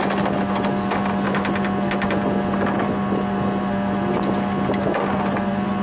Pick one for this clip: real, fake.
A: real